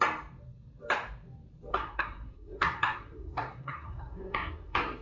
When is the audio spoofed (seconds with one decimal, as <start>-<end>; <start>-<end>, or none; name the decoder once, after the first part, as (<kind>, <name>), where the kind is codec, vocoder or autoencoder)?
1.7-5.0 (codec, SNAC)